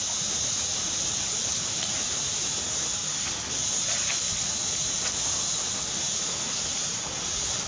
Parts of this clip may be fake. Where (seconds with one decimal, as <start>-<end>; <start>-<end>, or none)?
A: 1.1-1.9

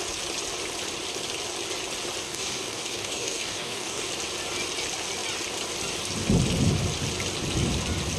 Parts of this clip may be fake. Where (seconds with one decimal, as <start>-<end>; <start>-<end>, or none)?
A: 2.2-4.1

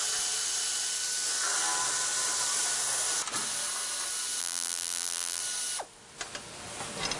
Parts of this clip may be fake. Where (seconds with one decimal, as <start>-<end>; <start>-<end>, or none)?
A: 4.4-5.4

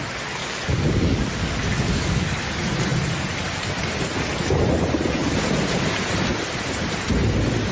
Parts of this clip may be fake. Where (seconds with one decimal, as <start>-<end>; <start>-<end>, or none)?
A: 0.4-2.4